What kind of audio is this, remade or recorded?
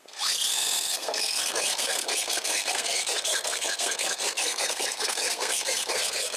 remade